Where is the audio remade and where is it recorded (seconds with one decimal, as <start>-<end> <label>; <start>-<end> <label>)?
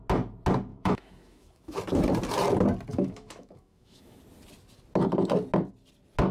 0.0-0.7 recorded; 0.7-1.8 remade; 1.8-2.9 recorded; 2.9-4.2 remade; 4.2-6.3 recorded